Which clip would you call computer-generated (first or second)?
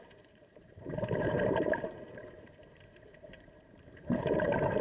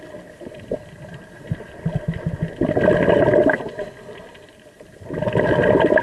first